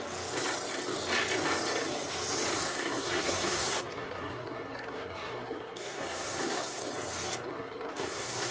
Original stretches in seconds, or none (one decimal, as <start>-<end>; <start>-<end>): 0.0-2.6; 6.9-7.5